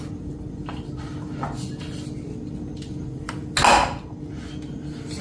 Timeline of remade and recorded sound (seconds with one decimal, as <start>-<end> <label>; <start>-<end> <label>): 0.0-5.2 recorded